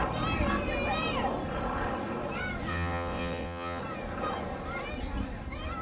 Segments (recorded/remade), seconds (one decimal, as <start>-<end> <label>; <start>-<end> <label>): 0.0-2.7 recorded; 2.7-3.8 remade; 3.8-5.8 recorded